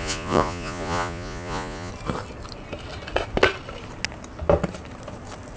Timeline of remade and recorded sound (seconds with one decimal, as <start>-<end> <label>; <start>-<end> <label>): 0.0-1.9 remade; 1.9-5.6 recorded